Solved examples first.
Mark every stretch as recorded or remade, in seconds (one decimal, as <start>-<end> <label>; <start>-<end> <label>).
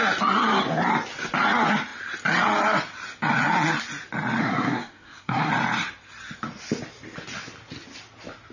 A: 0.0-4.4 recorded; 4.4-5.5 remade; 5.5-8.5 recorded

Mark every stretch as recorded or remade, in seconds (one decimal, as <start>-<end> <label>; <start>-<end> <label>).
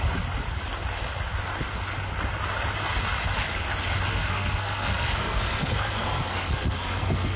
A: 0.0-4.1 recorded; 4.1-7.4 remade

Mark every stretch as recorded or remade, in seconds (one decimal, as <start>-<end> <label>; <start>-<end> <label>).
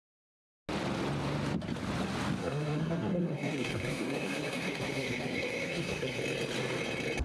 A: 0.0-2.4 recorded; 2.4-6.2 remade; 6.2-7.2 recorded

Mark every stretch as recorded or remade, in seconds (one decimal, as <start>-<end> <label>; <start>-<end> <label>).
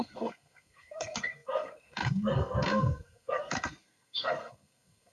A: 0.0-5.1 remade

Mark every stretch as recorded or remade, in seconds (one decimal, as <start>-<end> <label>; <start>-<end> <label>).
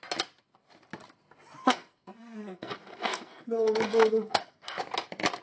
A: 0.0-1.6 recorded; 1.6-4.8 remade; 4.8-5.4 recorded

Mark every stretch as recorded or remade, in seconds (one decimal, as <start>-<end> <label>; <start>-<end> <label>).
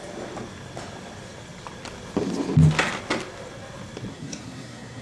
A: 0.0-4.1 recorded; 4.1-5.0 remade